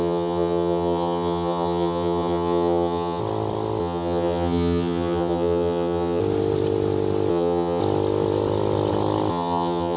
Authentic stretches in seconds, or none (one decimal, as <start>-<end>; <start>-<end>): 3.2-3.8; 6.2-7.3; 7.8-9.3